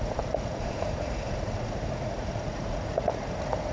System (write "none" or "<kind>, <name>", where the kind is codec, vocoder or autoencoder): vocoder, Vocos